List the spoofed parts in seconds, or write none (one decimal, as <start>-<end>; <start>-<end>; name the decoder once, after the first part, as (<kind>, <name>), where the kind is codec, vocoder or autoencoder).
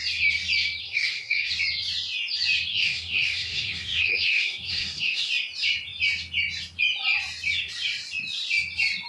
0.8-1.5 (codec, SNAC); 2.7-5.3